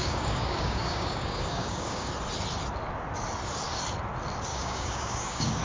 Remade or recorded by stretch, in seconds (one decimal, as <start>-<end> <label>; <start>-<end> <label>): 0.0-2.1 remade; 2.1-4.5 recorded; 4.5-5.6 remade